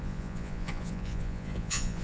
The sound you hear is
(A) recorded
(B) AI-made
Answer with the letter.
B